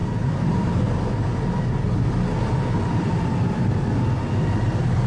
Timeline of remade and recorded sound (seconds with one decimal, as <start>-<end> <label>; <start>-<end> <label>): 0.0-5.1 recorded